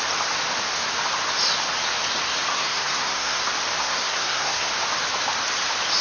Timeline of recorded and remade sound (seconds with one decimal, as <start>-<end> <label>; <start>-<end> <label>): 0.0-2.5 recorded; 2.5-3.4 remade; 3.4-3.8 recorded; 3.8-4.7 remade; 4.7-6.0 recorded